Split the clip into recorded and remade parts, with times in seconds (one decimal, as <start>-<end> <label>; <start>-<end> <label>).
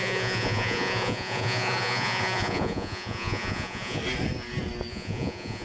0.0-4.0 remade; 4.0-4.9 recorded; 4.9-5.6 remade